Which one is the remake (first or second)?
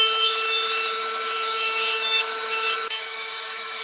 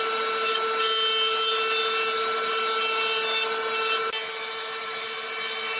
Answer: first